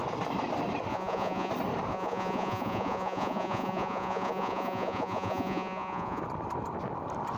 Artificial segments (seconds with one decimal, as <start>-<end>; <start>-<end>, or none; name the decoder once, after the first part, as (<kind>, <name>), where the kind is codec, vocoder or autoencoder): 0.9-1.5 (vocoder, Vocos); 1.9-6.2